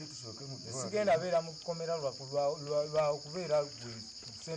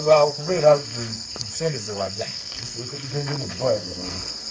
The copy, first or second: second